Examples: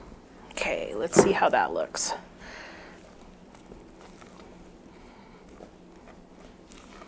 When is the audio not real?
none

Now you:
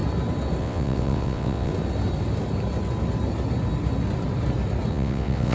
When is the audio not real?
0.6-1.7 (vocoder, WaveNeXt); 4.9-5.5

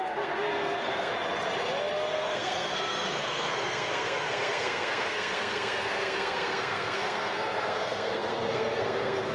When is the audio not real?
0.0-1.1 (codec, SNAC); 2.1-9.3

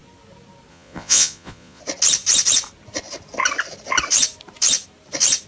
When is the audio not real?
0.7-1.8 (vocoder, Vocos)

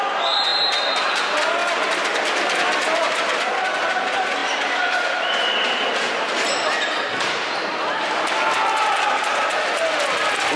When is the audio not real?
none

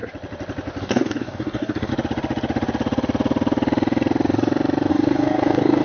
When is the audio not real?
0.8-1.9 (codec, DAC); 4.9-5.8

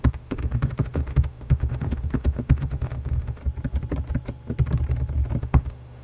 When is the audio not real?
0.0-3.4 (autoencoder, DAC-VAE); 5.4-6.0